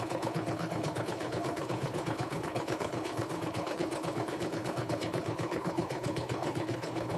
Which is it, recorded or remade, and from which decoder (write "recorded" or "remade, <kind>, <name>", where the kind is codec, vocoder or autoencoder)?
remade, codec, HILCodec